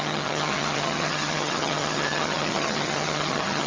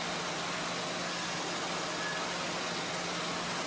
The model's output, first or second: first